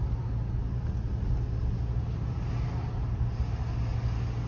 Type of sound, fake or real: real